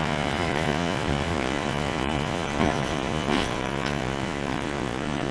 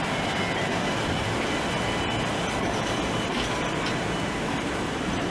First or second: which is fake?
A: first